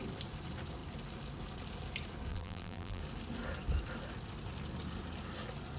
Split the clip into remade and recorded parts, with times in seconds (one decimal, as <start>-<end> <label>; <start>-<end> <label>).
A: 0.0-2.3 recorded; 2.3-3.0 remade; 3.0-5.8 recorded